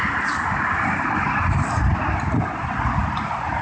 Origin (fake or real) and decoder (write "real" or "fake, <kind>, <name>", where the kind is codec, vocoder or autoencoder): real